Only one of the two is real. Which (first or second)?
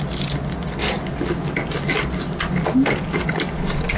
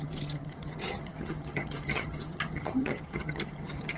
first